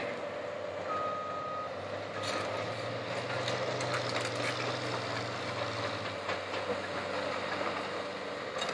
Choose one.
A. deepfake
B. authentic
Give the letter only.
B